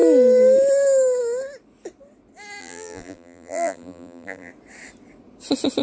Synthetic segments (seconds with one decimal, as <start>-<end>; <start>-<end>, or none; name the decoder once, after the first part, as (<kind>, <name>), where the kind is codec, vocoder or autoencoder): 2.6-4.5 (vocoder, BigVGAN v2)